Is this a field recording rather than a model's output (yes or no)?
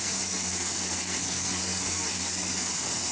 no